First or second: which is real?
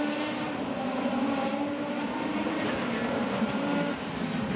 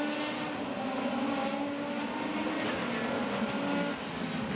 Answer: second